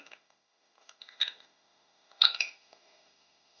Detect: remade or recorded remade